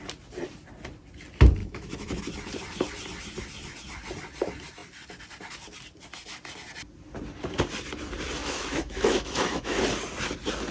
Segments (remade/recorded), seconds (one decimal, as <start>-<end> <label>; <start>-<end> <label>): 0.0-1.6 recorded; 1.6-2.2 remade; 2.2-8.4 recorded; 8.4-9.8 remade; 9.8-10.7 recorded